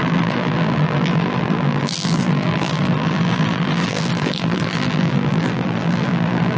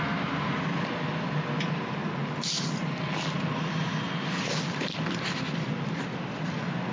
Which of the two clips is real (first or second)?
second